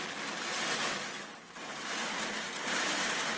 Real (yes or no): yes